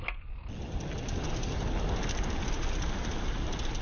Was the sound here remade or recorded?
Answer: recorded